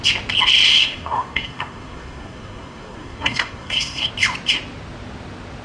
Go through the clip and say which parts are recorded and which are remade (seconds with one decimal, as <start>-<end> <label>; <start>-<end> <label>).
0.0-0.7 recorded; 0.7-4.1 remade; 4.1-5.6 recorded